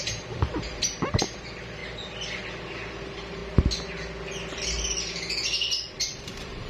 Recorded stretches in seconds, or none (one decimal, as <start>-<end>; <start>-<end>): 1.8-2.9; 3.4-5.9